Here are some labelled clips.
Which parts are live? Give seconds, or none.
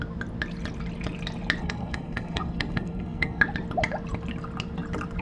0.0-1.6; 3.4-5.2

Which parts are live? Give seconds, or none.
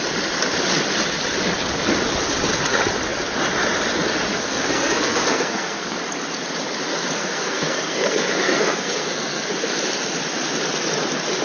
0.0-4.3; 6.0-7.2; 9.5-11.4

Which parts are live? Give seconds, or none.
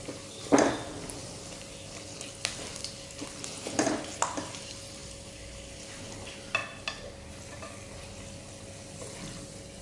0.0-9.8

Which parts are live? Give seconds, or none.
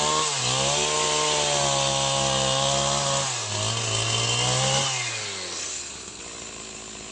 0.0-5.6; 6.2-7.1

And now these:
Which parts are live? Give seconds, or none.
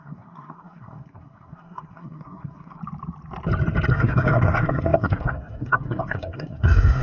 2.8-3.9